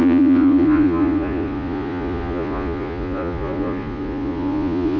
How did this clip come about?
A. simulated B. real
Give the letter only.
A